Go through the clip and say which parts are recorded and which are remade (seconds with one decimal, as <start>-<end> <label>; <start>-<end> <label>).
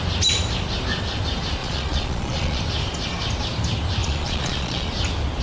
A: 0.0-1.6 recorded; 1.6-2.6 remade; 2.6-4.0 recorded; 4.0-4.9 remade; 4.9-5.4 recorded